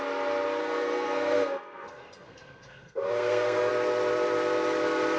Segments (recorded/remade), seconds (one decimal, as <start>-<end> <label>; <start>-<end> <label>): 0.0-0.6 recorded; 0.6-3.7 remade; 3.7-5.2 recorded